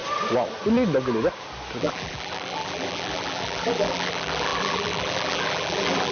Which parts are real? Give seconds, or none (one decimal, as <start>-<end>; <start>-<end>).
0.0-1.8

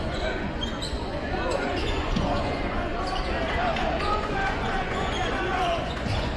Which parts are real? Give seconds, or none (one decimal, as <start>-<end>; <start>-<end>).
2.9-3.5

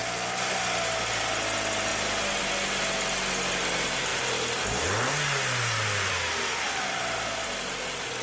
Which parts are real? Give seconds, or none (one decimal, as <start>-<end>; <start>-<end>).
0.0-8.2

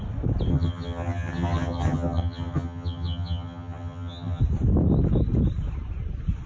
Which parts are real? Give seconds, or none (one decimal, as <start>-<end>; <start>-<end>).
0.0-0.5; 4.4-6.5

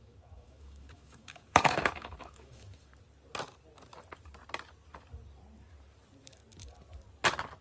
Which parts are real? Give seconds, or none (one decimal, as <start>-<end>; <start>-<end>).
2.9-7.6

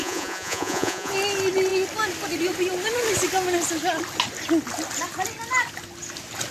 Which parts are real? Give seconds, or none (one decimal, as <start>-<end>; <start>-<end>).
1.1-6.5

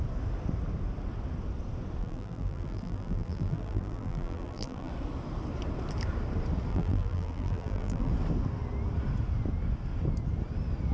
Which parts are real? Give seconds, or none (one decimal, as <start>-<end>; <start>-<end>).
0.0-2.0; 4.9-6.7; 8.1-10.9

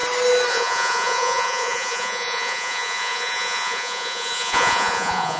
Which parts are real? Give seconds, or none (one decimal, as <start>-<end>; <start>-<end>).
0.0-0.5